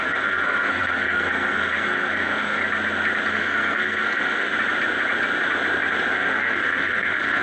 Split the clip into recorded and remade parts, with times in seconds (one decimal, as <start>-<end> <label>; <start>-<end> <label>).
0.0-2.6 remade; 2.6-3.3 recorded; 3.3-4.5 remade; 4.5-6.1 recorded; 6.1-7.4 remade